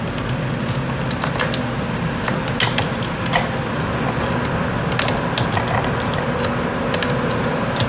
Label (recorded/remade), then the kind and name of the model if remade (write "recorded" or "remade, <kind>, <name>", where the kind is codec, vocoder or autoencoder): recorded